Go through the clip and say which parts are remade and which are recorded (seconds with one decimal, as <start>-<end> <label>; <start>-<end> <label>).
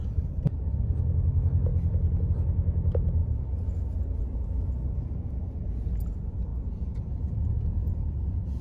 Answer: 0.0-6.5 recorded; 6.5-8.6 remade